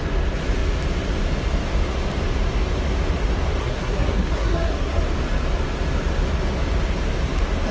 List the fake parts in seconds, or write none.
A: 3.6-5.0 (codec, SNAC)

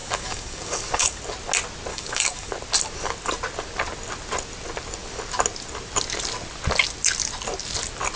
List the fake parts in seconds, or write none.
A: 0.0-1.2 (codec, DAC); 1.9-2.5

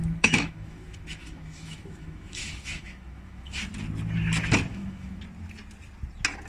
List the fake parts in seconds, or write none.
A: 0.0-3.6 (autoencoder, DAC-VAE); 4.7-5.2

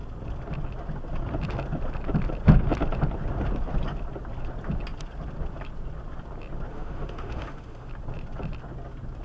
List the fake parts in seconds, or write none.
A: 6.7-7.9 (autoencoder, DAC-VAE)

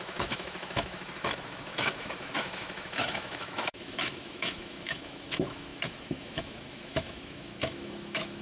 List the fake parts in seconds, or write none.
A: 0.0-8.4 (autoencoder, DAC-VAE)

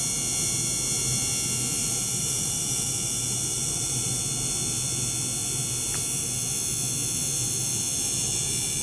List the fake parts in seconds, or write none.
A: 1.8-4.2 (vocoder, BigVGAN v2)

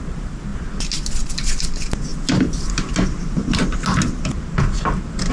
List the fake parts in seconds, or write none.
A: none